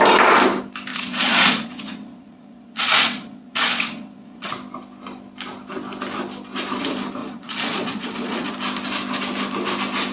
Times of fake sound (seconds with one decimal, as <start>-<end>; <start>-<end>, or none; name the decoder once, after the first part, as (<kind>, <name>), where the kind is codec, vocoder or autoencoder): 0.9-4.5 (vocoder, Vocos); 7.2-8.5